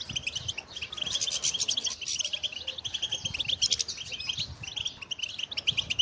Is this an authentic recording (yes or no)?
yes